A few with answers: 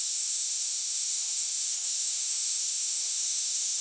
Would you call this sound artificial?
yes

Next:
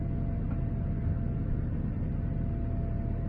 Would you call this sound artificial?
no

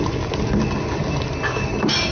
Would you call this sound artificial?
no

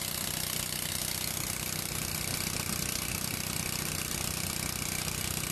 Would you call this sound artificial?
no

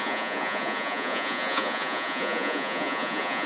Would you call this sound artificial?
yes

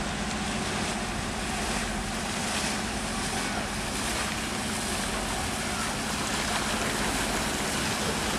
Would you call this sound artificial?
no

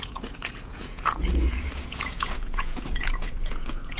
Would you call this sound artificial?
yes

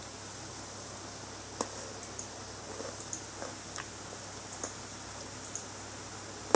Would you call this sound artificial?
no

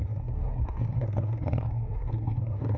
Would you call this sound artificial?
yes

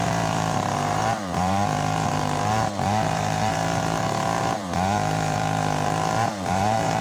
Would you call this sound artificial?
yes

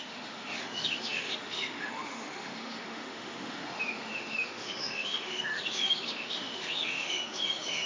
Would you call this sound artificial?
yes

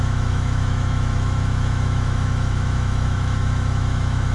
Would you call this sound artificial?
yes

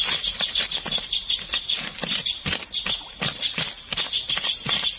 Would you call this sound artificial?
no